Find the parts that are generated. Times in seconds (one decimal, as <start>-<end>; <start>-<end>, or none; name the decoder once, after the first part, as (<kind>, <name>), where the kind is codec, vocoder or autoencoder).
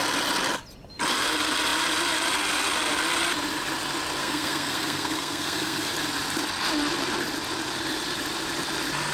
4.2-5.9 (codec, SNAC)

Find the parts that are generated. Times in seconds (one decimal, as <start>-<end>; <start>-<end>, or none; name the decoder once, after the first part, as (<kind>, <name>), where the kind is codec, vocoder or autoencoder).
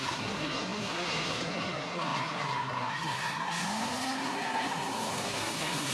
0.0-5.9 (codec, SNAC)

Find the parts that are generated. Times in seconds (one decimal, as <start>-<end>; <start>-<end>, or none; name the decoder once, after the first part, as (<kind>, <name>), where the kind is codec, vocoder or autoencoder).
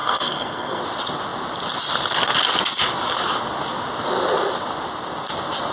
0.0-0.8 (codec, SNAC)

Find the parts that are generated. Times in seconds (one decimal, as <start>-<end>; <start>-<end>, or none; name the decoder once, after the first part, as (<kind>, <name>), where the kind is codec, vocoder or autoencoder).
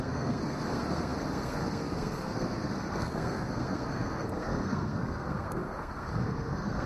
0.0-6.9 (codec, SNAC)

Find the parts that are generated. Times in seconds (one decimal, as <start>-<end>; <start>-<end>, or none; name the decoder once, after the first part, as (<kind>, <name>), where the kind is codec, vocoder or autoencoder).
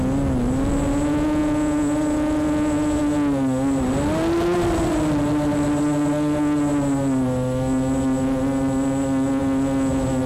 none